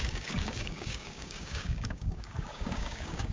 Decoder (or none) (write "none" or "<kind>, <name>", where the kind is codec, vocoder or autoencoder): codec, DAC